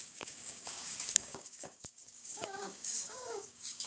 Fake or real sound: fake